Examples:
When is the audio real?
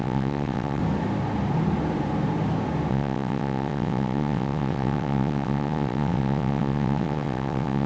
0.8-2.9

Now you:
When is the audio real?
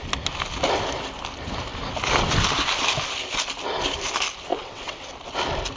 0.0-4.5; 5.1-5.8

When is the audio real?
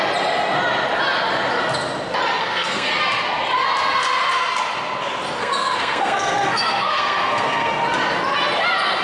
0.0-2.4; 2.9-5.4; 7.7-9.0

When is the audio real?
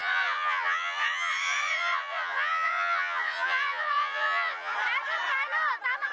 4.7-6.1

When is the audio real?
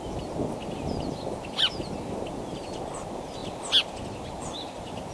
0.0-5.1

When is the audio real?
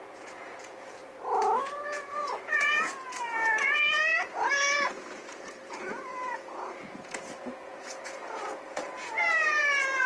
1.0-1.6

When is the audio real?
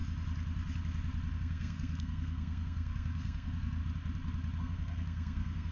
0.0-1.3; 3.8-4.6